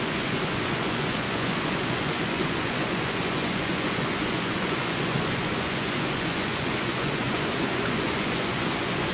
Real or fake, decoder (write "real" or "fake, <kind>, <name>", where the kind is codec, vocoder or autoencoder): fake, vocoder, Vocos